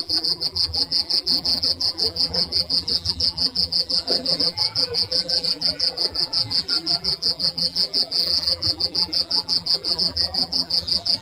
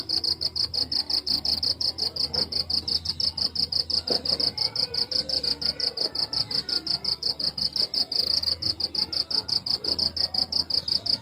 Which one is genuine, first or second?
second